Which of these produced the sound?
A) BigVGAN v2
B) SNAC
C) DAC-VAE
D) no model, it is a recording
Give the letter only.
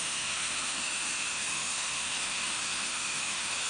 C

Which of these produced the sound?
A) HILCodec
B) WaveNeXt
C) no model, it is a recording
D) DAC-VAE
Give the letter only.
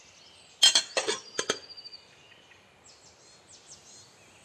C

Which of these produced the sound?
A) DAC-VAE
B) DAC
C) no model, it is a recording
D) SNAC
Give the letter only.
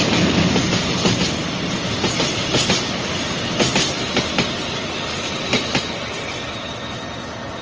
C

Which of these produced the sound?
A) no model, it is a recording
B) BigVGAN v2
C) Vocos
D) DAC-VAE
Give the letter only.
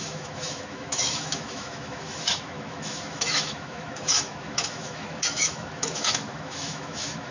D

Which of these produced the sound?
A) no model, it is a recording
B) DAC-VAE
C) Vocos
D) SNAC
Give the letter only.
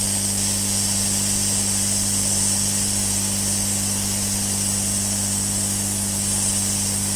A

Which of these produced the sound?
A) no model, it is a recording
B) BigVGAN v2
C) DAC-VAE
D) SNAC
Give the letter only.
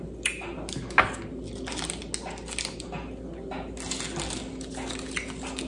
A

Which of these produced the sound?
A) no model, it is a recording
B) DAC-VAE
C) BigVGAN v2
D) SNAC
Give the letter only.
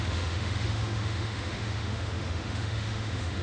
B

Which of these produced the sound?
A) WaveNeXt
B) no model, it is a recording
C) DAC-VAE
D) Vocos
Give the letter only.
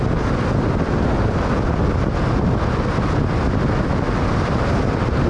B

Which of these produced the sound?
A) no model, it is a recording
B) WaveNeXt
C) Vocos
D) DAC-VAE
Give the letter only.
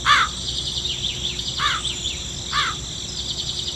A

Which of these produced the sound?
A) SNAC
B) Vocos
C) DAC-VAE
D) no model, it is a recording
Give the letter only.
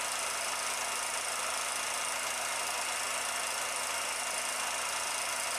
D